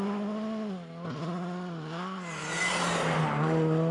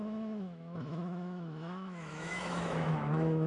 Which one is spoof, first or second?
second